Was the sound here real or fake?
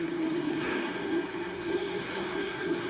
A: fake